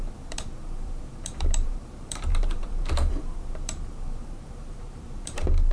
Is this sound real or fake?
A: fake